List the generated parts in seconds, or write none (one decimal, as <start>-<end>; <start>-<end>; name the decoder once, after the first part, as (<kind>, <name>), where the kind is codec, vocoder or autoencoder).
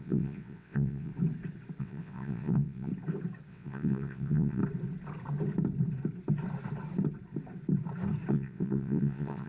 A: 0.0-1.1 (vocoder, WaveNeXt); 1.8-2.9; 3.5-4.6; 8.3-9.5